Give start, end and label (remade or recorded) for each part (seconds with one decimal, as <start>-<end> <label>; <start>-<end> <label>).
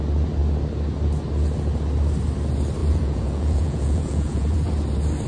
0.0-2.8 recorded; 2.8-4.7 remade; 4.7-5.3 recorded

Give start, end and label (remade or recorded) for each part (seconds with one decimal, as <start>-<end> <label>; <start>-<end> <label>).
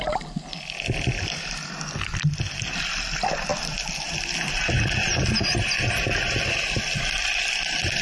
0.0-8.0 recorded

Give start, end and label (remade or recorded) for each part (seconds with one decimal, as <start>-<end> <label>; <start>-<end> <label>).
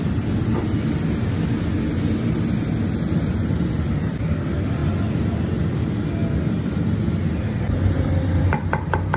0.0-9.2 recorded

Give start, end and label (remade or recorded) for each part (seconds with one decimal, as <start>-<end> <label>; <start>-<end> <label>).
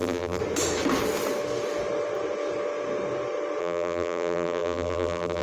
0.0-0.4 remade; 0.4-3.6 recorded; 3.6-5.4 remade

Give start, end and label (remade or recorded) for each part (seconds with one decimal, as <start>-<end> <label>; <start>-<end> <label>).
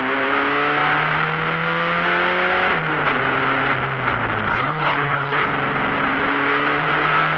0.0-4.5 recorded; 4.5-5.5 remade; 5.5-7.4 recorded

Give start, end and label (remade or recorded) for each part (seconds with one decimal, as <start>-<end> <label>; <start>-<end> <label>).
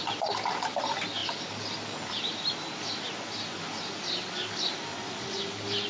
0.0-4.9 recorded; 4.9-5.4 remade; 5.4-5.9 recorded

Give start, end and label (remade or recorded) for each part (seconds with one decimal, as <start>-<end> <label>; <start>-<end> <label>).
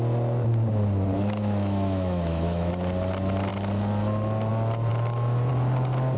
0.0-1.1 recorded; 1.1-2.7 remade; 2.7-6.2 recorded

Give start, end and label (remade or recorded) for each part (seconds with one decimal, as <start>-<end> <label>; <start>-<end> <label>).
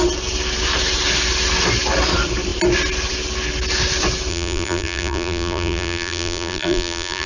0.0-4.3 recorded; 4.3-7.3 remade